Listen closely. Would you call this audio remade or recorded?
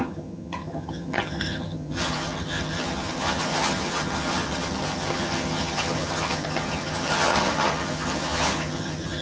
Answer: remade